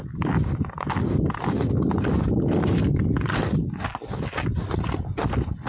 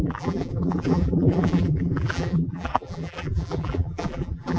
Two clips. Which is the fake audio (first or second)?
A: second